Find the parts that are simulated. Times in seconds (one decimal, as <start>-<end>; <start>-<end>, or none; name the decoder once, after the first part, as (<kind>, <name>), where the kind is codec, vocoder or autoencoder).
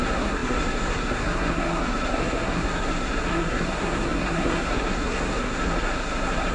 0.0-6.5 (codec, SNAC)